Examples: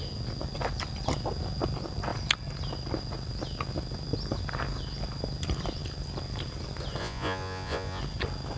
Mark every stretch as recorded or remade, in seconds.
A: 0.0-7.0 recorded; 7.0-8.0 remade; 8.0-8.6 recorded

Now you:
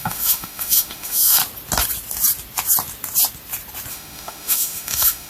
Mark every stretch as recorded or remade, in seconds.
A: 0.0-1.4 remade; 1.4-3.9 recorded; 3.9-5.3 remade

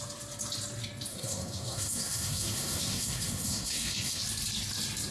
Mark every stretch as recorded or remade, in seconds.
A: 0.0-1.1 recorded; 1.1-4.2 remade; 4.2-5.1 recorded

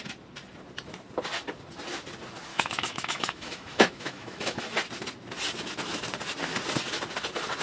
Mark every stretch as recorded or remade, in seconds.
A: 0.0-2.5 recorded; 2.5-4.6 remade; 4.6-7.6 recorded